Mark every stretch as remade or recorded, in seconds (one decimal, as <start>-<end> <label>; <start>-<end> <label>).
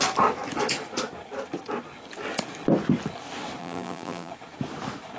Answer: 0.0-3.6 recorded; 3.6-4.3 remade; 4.3-5.2 recorded